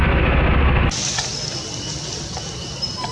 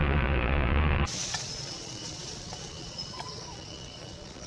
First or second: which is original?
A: first